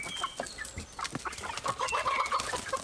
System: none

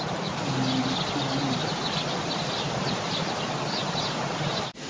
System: none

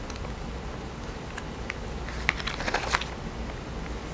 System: none